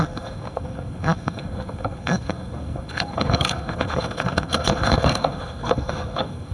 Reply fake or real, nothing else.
fake